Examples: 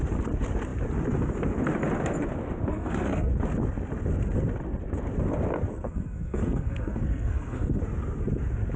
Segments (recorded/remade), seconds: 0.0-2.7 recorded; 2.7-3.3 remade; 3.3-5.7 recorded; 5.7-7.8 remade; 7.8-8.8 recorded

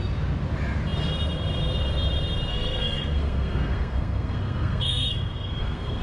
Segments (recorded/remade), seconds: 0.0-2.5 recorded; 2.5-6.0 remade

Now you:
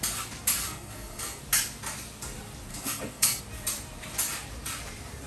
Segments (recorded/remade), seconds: 0.0-0.6 recorded; 0.6-1.4 remade; 1.4-2.7 recorded; 2.7-3.4 remade; 3.4-5.3 recorded